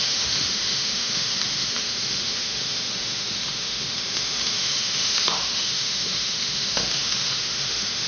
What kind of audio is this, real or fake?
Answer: fake